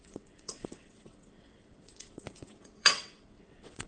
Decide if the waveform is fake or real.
fake